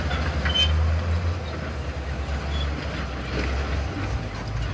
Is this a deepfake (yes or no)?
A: no